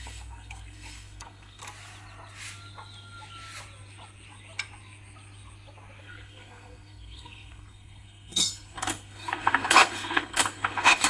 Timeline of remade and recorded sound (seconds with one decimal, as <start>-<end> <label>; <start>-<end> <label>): 0.0-1.6 remade; 1.6-6.0 recorded; 6.0-11.1 remade